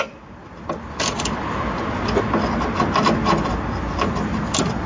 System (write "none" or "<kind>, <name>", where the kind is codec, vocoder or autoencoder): none